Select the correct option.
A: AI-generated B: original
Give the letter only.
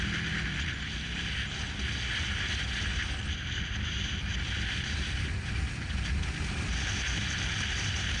B